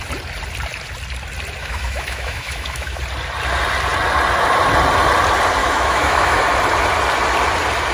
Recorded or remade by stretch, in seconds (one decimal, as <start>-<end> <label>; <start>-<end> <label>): 0.0-1.6 recorded; 1.6-3.0 remade; 3.0-5.6 recorded; 5.6-6.4 remade; 6.4-7.9 recorded